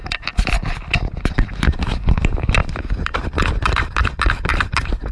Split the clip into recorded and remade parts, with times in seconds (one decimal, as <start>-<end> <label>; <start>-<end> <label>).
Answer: 0.0-1.2 remade; 1.2-2.6 recorded; 2.6-4.2 remade; 4.2-5.1 recorded